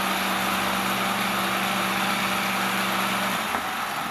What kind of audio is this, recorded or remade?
recorded